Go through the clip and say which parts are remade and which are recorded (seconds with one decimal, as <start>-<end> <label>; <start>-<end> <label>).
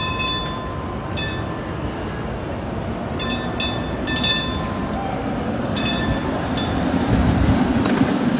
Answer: 0.0-8.4 recorded